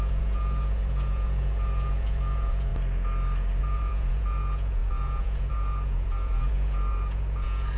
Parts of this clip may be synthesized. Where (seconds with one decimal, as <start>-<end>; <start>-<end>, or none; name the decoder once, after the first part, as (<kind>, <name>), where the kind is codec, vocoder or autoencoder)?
0.0-2.7 (vocoder, Vocos); 3.6-7.8